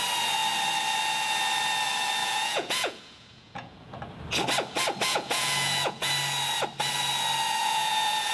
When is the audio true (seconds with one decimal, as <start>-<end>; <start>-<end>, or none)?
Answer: 0.0-2.2; 4.0-5.1; 6.1-7.6

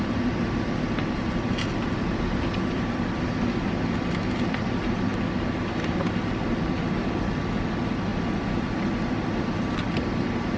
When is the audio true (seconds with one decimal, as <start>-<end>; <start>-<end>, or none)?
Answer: 0.0-10.6